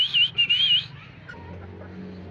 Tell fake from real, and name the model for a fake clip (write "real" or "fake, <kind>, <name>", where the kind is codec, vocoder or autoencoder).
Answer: real